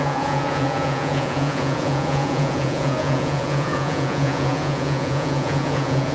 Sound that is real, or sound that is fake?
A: fake